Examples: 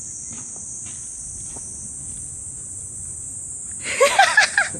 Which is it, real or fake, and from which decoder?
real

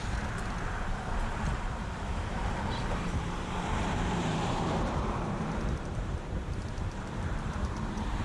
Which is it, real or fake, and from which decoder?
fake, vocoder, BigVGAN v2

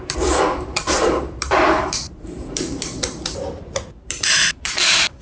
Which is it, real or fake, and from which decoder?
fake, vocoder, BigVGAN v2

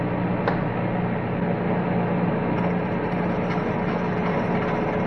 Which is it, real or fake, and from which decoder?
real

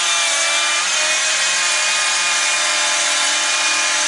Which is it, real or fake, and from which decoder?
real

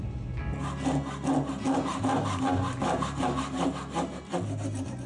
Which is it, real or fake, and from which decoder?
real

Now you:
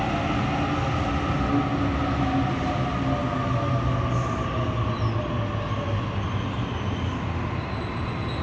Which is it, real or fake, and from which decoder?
real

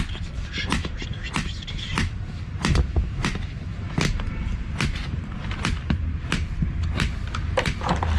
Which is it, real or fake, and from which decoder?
fake, vocoder, BigVGAN v2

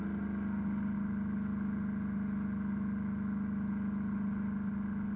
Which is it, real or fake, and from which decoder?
real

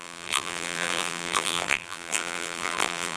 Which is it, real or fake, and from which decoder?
fake, vocoder, BigVGAN v2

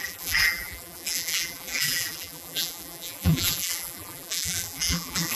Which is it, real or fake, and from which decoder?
fake, vocoder, BigVGAN v2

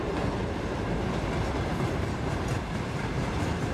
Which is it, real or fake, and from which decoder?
real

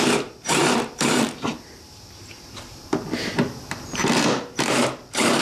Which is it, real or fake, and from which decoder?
fake, vocoder, BigVGAN v2